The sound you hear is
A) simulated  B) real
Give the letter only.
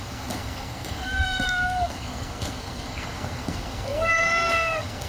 A